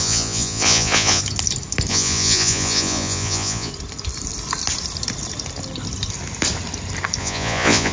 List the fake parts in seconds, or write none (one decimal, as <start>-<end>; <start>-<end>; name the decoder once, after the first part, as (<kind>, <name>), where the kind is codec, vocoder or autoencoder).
0.0-1.2 (vocoder, Vocos); 1.9-3.7; 7.2-7.9